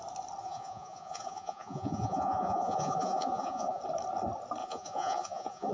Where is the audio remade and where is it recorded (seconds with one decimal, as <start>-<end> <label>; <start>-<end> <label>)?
0.0-0.4 recorded; 0.4-3.8 remade; 3.8-4.6 recorded; 4.6-5.7 remade